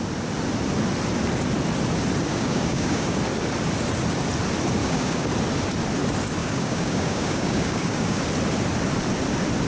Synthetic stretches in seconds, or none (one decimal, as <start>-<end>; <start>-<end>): 2.3-3.2; 4.8-5.3; 6.4-8.2